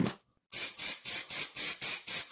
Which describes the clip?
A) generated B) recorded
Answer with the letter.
B